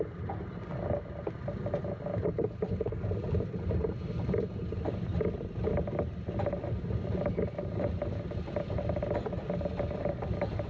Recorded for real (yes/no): yes